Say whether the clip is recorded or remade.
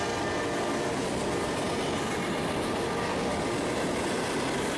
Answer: recorded